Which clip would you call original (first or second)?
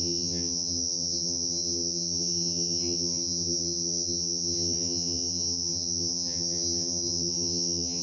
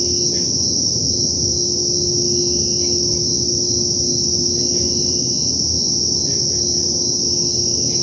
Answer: second